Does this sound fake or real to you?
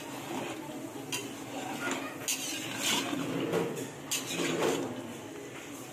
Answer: real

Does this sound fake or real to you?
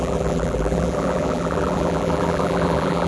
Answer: fake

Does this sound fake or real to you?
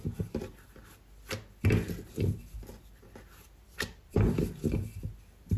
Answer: real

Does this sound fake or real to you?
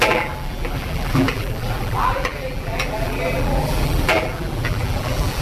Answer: fake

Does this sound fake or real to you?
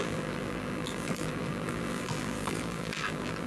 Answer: fake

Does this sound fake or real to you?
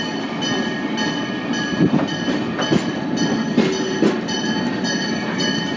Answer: real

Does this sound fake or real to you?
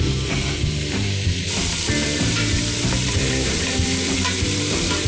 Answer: fake